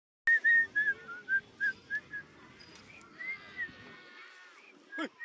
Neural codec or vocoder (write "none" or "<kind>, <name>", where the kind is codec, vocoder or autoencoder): none